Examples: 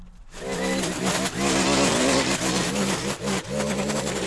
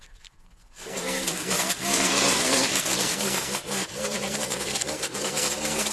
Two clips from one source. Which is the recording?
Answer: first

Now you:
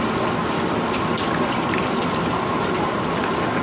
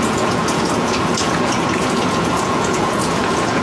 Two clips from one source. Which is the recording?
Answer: first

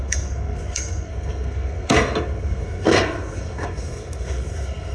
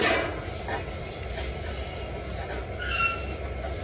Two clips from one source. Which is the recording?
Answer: second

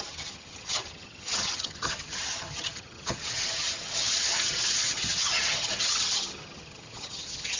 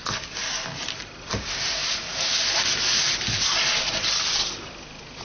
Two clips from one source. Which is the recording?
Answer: second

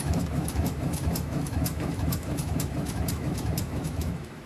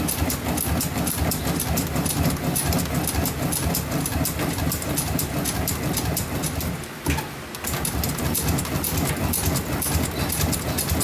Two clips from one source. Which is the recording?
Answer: second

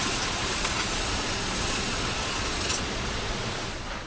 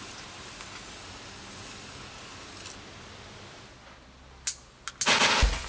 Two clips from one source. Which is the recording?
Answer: second